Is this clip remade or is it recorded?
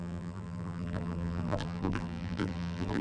remade